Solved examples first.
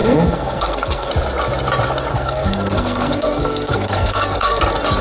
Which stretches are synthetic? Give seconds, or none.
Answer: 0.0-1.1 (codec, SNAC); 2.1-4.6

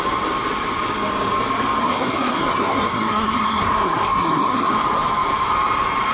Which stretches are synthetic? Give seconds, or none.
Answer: 1.8-4.7 (codec, SNAC)

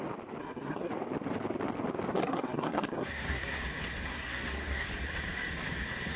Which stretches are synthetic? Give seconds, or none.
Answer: 0.4-0.9 (codec, SNAC); 2.1-3.6; 4.1-4.9

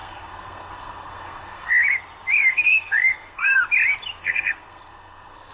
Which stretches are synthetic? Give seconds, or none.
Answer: 0.0-1.7 (codec, SNAC); 2.5-3.6; 4.2-5.5

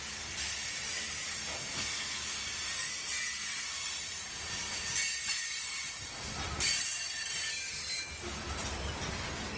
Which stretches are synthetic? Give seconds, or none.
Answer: 1.7-2.4 (codec, SNAC)